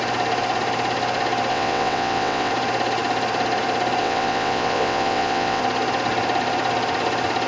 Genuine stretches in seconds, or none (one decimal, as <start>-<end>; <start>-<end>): 0.0-1.5; 2.5-4.0; 5.6-7.5